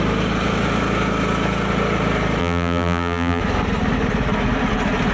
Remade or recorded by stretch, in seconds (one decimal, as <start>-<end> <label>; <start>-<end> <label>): 0.0-2.4 recorded; 2.4-3.4 remade; 3.4-5.1 recorded